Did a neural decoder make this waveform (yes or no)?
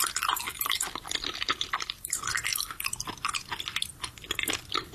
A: yes